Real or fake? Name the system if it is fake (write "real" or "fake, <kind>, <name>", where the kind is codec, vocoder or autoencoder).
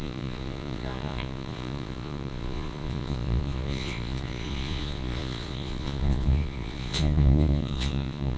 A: fake, vocoder, Vocos